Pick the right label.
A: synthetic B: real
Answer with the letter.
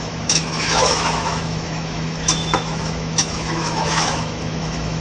A